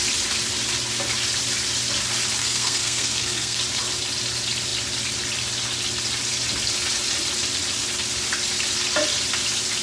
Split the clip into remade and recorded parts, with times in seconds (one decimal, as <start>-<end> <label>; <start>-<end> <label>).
0.0-2.4 recorded; 2.4-3.6 remade; 3.6-9.8 recorded